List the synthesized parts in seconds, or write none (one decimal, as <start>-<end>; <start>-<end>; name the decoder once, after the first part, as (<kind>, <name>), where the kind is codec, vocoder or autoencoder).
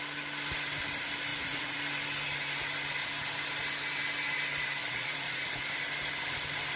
1.3-1.8 (vocoder, Vocos); 4.8-5.6